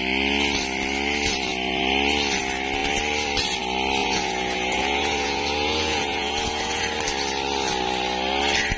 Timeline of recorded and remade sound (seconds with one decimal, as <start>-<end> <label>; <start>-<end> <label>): 0.0-4.0 recorded; 4.0-6.8 remade; 6.8-8.8 recorded